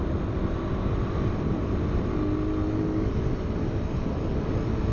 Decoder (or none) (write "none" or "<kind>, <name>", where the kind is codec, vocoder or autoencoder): none